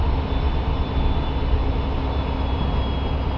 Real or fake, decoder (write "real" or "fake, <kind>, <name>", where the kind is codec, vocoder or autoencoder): real